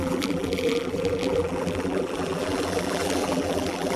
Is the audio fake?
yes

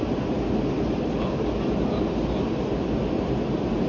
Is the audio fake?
no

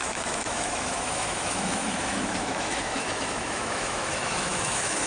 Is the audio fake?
yes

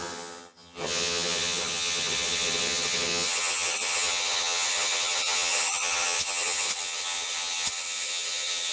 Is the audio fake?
yes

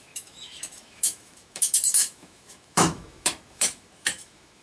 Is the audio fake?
yes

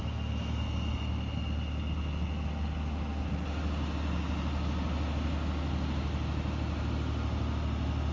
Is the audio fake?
no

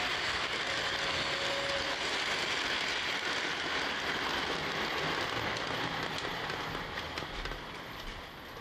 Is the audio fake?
no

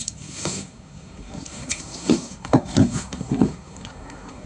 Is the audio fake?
yes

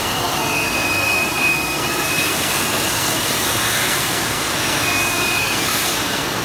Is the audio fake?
yes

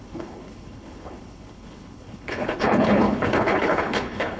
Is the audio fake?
yes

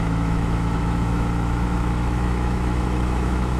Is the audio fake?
yes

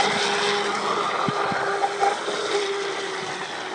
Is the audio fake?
no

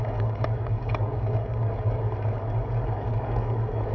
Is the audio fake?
yes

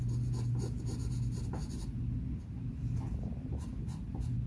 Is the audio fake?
no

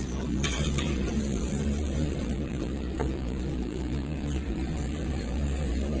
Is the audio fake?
yes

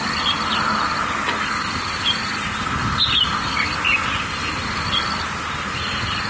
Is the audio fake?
no